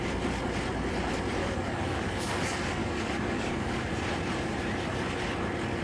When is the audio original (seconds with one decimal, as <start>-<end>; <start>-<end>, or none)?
0.0-1.4; 2.3-2.8; 3.9-5.8